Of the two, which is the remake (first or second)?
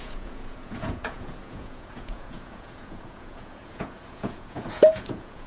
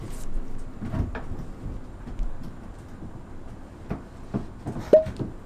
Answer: first